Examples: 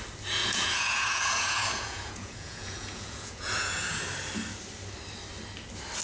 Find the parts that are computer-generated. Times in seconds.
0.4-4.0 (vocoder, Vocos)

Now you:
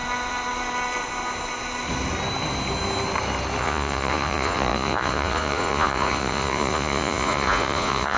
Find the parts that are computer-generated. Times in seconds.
3.6-8.2 (vocoder, Vocos)

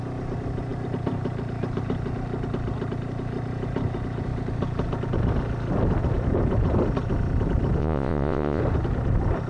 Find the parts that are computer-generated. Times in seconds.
7.8-8.6 (vocoder, Vocos)

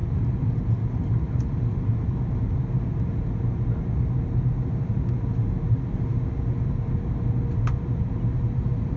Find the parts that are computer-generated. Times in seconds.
none

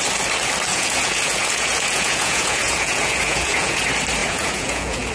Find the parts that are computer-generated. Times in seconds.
0.7-3.8 (vocoder, Vocos); 4.2-5.1

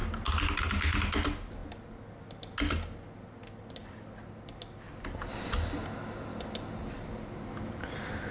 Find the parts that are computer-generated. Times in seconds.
none

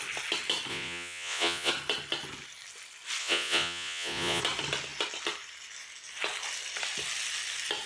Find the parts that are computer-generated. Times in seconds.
0.7-1.7 (vocoder, Vocos); 3.2-4.4